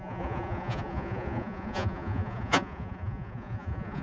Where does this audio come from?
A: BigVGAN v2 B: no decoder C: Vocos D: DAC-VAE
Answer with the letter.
C